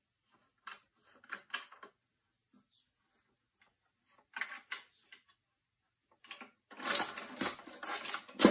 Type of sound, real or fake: real